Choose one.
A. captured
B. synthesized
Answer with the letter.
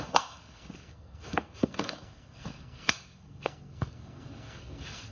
B